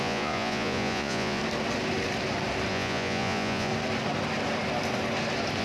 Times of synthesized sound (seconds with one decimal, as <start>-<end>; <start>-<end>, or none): 0.0-1.4; 2.7-3.7